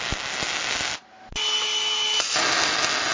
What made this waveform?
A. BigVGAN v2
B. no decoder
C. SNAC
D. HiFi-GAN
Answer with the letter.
B